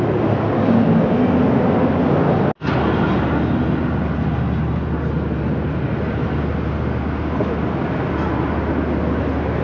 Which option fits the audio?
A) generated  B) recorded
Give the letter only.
B